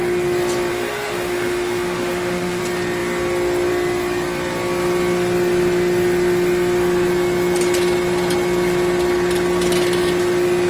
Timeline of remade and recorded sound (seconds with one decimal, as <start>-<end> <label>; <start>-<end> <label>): 0.0-0.7 recorded; 0.7-2.6 remade; 2.6-10.7 recorded